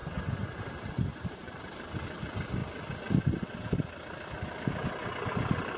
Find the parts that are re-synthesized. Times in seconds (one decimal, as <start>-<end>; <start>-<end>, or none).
0.7-2.6